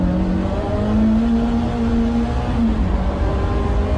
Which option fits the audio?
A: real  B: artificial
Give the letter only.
A